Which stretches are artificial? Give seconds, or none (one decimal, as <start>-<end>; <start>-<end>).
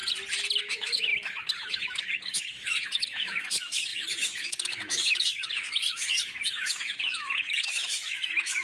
0.6-8.6